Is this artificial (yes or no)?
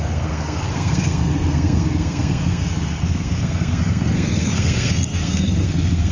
yes